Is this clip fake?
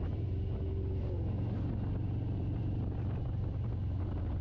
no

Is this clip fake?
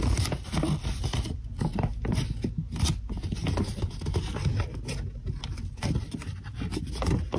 no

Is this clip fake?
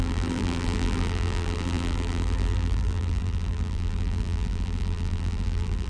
yes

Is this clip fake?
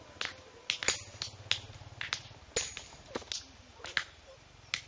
no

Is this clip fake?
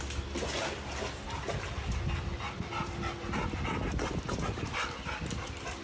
no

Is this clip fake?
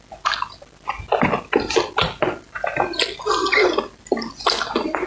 no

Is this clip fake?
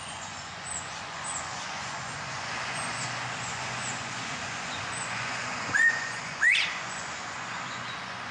yes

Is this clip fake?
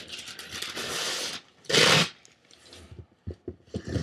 no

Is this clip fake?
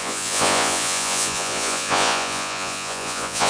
yes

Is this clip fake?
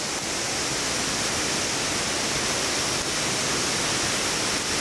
no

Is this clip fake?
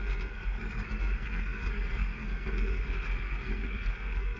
yes